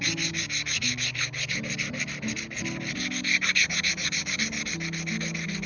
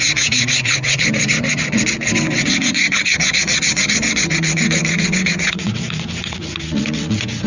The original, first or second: first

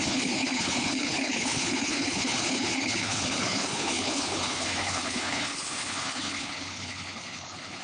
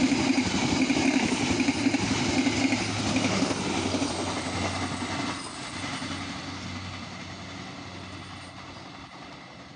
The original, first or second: second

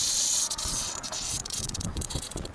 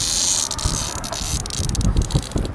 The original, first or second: second